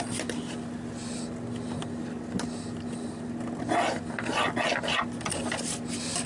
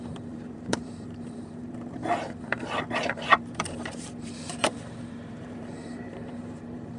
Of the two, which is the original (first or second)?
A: first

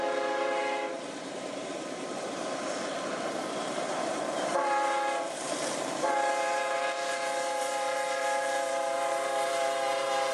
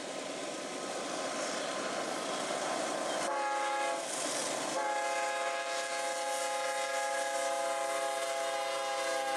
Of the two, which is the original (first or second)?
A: second